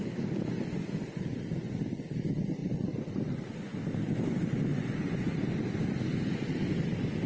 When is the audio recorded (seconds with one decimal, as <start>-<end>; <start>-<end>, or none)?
0.0-2.6; 3.2-4.7; 5.4-7.3

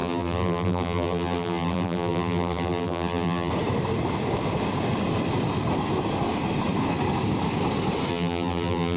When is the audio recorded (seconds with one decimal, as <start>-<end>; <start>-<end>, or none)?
3.5-8.1

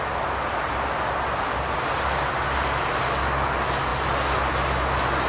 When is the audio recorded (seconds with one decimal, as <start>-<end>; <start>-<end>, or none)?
0.0-5.3

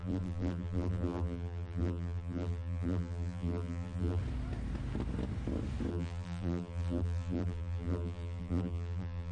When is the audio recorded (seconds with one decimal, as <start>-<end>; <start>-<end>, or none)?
4.2-5.9

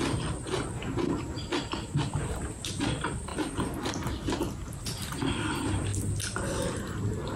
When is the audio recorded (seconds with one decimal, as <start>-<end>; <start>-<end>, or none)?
3.3-3.9; 5.9-7.0

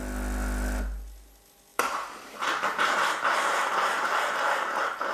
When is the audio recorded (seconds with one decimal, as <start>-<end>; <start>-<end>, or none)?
0.0-1.7; 3.6-5.1